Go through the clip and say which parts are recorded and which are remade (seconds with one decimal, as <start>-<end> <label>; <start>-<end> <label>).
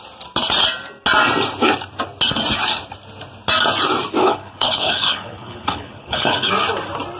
0.0-4.2 recorded; 4.2-6.5 remade; 6.5-7.2 recorded